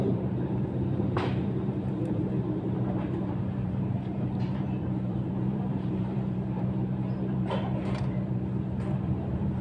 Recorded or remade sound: remade